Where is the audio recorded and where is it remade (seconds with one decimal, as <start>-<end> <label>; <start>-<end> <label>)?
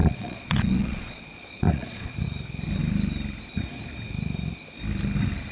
0.0-2.1 remade; 2.1-5.5 recorded